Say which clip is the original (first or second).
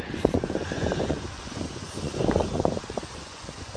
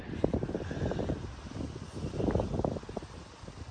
second